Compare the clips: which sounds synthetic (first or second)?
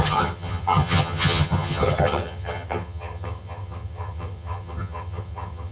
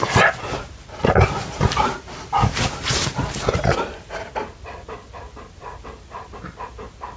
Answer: first